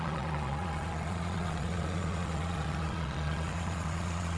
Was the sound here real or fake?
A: fake